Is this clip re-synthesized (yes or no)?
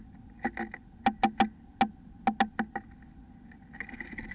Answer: no